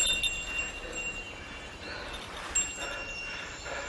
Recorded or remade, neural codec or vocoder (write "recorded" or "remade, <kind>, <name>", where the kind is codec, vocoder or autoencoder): recorded